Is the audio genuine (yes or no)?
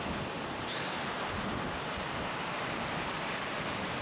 yes